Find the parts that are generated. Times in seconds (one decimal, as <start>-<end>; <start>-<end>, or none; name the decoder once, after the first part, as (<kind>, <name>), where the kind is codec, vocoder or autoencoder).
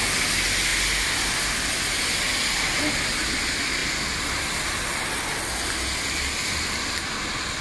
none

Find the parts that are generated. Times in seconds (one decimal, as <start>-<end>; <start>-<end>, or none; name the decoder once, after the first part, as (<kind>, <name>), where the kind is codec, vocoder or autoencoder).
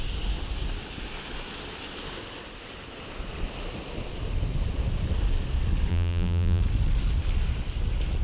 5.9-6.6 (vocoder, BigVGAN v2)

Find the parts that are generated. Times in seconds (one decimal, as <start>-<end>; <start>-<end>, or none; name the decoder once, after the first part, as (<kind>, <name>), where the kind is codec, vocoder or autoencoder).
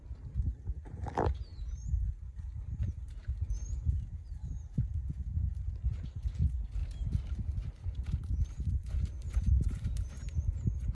6.8-10.9 (vocoder, BigVGAN v2)